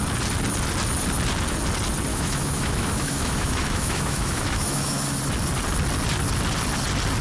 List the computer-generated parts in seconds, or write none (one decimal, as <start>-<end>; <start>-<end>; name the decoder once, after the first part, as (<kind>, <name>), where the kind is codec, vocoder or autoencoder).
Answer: 2.1-5.2 (autoencoder, DAC-VAE)